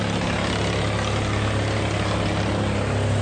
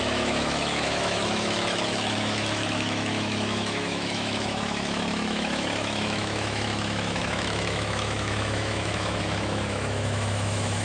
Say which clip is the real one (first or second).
first